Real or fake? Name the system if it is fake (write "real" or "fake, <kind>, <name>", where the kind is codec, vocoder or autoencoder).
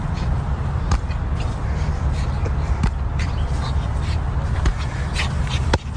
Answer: real